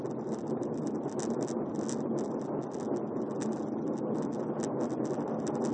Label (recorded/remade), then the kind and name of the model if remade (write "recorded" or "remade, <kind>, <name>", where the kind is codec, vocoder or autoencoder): recorded